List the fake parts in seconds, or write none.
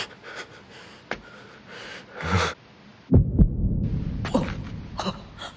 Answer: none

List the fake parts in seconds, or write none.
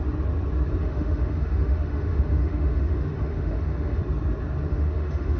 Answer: 0.8-4.0 (autoencoder, DAC-VAE); 4.7-5.4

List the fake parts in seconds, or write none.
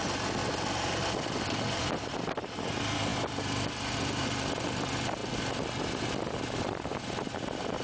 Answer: 3.1-4.2 (vocoder, BigVGAN v2)